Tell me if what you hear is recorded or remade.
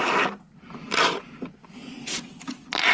remade